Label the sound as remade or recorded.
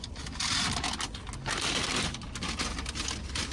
recorded